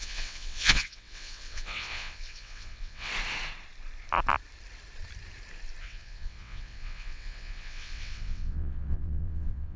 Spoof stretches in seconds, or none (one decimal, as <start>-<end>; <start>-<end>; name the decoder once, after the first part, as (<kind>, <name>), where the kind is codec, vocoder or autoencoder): 0.0-3.1 (vocoder, WaveNeXt); 5.8-9.8